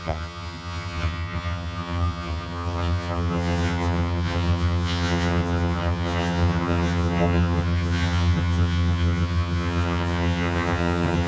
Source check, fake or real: fake